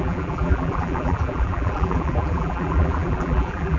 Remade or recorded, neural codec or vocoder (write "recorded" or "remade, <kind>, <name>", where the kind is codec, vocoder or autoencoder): remade, vocoder, BigVGAN v2